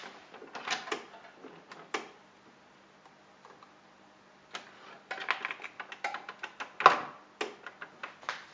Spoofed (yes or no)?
no